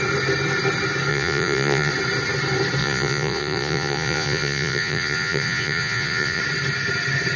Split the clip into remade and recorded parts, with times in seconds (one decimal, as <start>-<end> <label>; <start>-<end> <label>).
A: 0.0-1.1 recorded; 1.1-1.9 remade; 1.9-2.8 recorded; 2.8-6.4 remade; 6.4-7.4 recorded